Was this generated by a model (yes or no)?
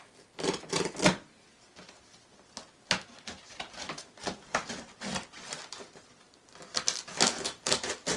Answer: no